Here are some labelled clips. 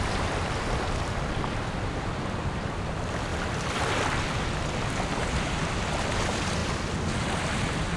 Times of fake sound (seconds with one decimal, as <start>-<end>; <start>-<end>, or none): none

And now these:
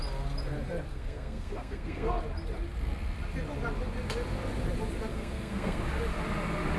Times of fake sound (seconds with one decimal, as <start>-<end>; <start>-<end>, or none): 0.9-2.2; 5.1-5.8

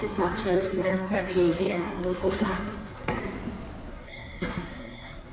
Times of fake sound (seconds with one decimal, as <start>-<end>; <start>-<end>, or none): 0.0-3.2; 3.9-5.3

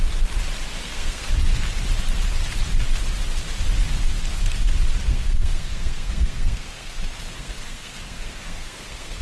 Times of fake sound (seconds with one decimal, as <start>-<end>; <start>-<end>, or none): 0.8-1.3; 5.1-9.2

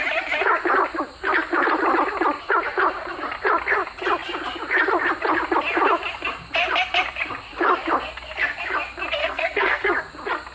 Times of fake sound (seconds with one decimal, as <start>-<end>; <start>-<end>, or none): 9.2-9.9